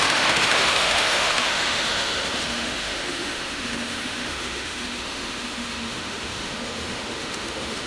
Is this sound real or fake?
fake